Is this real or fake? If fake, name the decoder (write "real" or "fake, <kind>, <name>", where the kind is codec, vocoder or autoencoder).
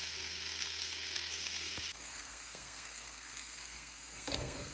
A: fake, codec, SNAC